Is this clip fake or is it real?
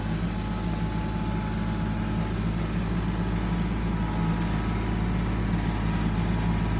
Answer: real